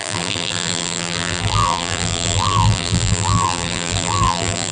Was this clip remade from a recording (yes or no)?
yes